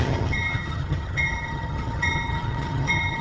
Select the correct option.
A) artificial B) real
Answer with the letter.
A